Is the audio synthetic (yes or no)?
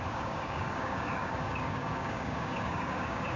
yes